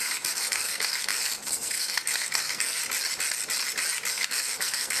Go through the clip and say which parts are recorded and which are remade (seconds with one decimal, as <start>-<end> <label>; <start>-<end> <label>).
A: 0.0-2.8 remade; 2.8-4.1 recorded; 4.1-5.0 remade